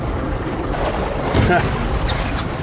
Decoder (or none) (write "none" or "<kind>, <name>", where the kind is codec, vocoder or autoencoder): none